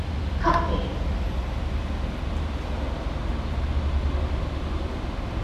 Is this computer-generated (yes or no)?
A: no